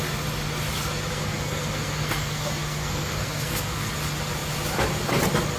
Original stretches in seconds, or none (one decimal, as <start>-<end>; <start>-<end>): 0.0-1.1; 3.9-5.6